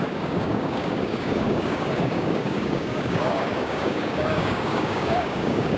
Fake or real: fake